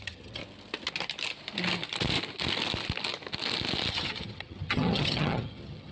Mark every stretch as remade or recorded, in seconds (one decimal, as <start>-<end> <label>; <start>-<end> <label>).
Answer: 0.0-0.4 remade; 0.4-3.9 recorded; 3.9-5.9 remade